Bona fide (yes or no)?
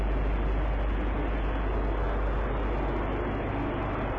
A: yes